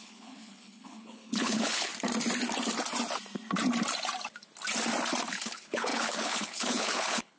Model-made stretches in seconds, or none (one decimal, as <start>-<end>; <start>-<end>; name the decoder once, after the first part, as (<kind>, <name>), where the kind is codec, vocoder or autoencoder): 0.0-1.9 (codec, HILCodec); 5.3-7.4